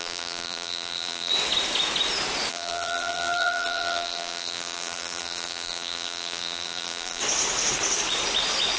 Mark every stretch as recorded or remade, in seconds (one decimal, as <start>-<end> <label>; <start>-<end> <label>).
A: 0.0-1.3 remade; 1.3-2.5 recorded; 2.5-7.2 remade; 7.2-8.8 recorded